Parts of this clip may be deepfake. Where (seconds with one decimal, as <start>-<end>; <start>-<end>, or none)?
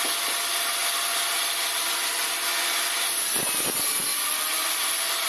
none